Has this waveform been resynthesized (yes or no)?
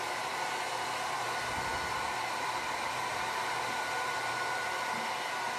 no